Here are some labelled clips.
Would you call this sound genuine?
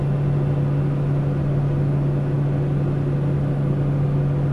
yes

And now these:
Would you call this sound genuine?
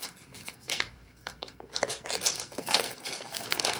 no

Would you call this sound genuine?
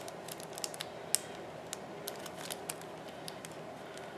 yes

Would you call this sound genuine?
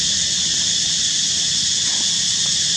yes